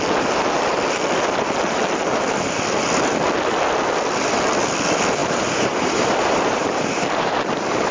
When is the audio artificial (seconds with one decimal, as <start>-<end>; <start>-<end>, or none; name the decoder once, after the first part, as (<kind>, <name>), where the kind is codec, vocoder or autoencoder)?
5.2-7.9 (vocoder, BigVGAN v2)